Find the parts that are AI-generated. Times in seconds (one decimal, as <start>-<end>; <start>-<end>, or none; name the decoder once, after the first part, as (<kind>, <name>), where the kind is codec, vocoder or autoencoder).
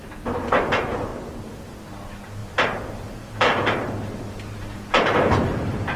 2.4-6.0 (vocoder, BigVGAN v2)